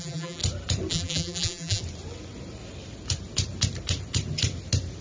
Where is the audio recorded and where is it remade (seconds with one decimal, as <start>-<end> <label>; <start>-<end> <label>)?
0.0-0.4 remade; 0.4-0.9 recorded; 0.9-1.8 remade; 1.8-5.0 recorded